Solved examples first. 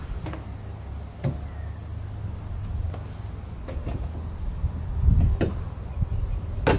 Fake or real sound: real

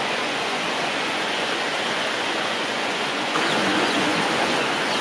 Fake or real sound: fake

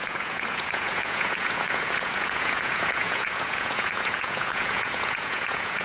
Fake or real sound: fake